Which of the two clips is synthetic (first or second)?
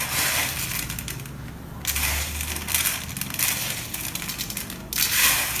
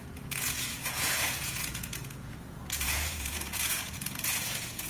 second